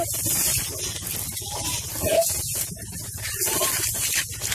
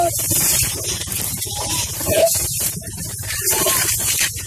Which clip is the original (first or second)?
first